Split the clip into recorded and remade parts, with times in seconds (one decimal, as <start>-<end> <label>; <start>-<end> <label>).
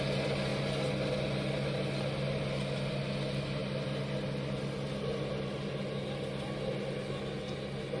0.0-8.0 recorded